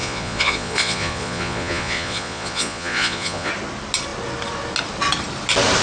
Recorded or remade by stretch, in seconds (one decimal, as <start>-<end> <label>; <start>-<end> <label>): 0.0-3.5 remade; 3.5-5.8 recorded